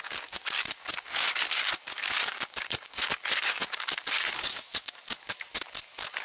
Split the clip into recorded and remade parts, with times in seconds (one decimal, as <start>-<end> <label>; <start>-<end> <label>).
0.0-6.2 remade